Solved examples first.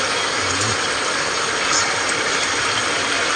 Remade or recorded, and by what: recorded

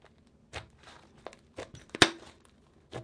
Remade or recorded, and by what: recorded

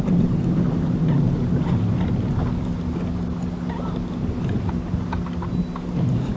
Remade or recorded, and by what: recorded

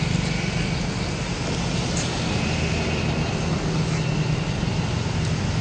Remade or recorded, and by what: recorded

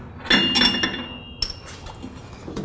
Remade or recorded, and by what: recorded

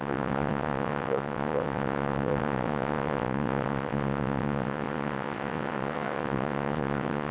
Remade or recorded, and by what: remade, vocoder, WaveNeXt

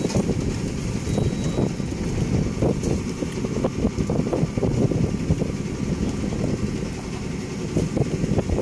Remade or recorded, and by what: recorded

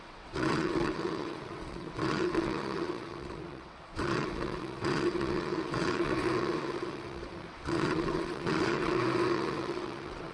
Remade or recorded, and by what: remade, vocoder, WaveNeXt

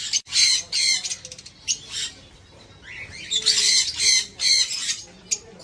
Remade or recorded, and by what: recorded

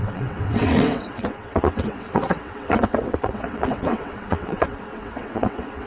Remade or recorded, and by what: remade, vocoder, WaveNeXt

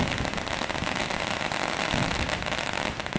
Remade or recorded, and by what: recorded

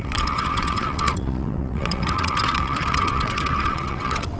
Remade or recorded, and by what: remade, vocoder, WaveNeXt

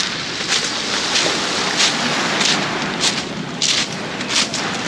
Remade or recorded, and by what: recorded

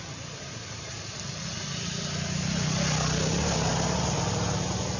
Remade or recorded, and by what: recorded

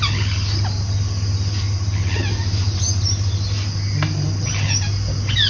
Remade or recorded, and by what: recorded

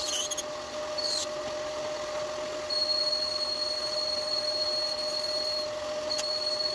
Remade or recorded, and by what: recorded